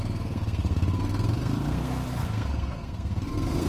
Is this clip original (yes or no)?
no